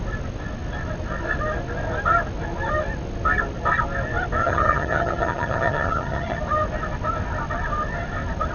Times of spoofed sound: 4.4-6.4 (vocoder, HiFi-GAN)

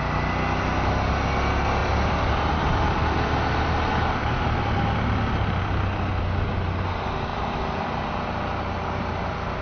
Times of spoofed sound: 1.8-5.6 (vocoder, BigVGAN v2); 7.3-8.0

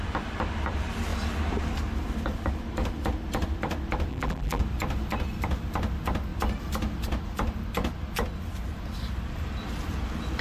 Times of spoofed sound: 4.1-4.6 (vocoder, BigVGAN v2)